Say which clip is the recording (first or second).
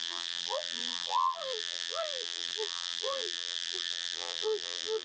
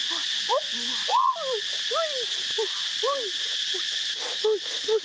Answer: second